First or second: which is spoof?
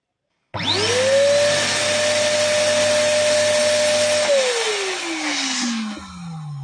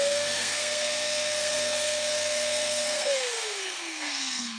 second